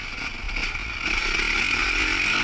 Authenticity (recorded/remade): recorded